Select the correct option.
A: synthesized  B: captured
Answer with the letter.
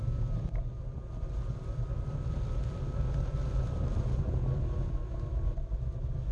B